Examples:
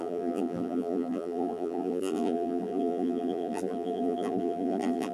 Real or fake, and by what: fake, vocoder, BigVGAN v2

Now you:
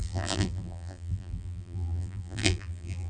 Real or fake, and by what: fake, vocoder, BigVGAN v2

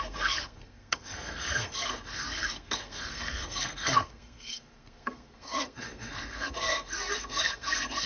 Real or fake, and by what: fake, codec, SNAC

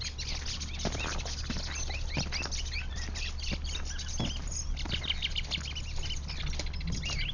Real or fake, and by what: real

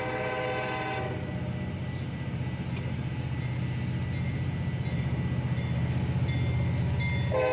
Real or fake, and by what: real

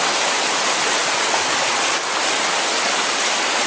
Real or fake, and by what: real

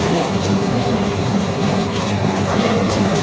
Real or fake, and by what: fake, codec, SNAC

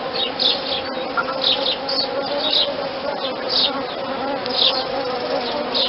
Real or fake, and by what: real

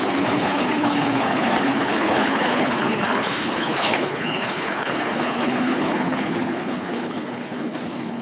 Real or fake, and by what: fake, codec, HILCodec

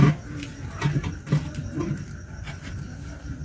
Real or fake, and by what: real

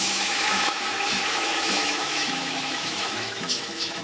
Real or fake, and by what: fake, autoencoder, DAC-VAE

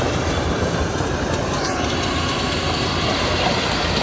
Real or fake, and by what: fake, vocoder, BigVGAN v2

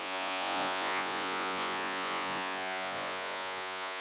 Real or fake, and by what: fake, vocoder, Vocos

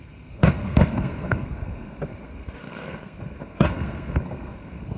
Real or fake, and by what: fake, codec, SNAC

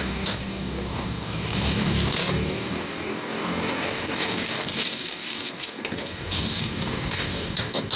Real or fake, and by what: fake, codec, DAC